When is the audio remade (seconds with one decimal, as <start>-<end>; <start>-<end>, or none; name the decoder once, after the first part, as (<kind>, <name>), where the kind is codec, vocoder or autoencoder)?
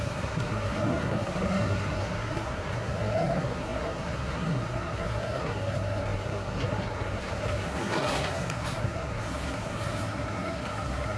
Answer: 0.0-11.2 (codec, SNAC)